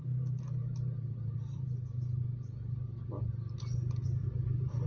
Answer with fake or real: real